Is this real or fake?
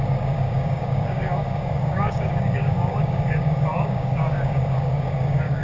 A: fake